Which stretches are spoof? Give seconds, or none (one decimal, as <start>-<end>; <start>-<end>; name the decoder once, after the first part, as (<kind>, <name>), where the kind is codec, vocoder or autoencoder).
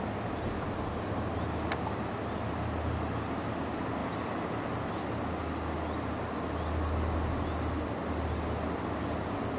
none